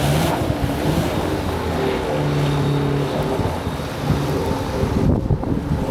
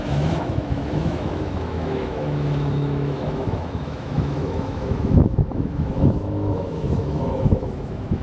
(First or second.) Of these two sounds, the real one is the first